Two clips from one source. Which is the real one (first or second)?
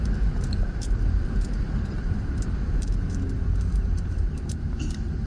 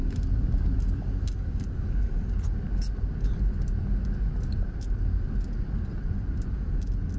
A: second